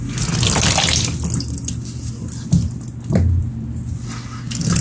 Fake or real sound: real